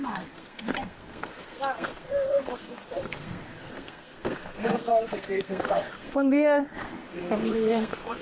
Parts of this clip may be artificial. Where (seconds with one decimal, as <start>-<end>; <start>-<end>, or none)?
0.0-8.2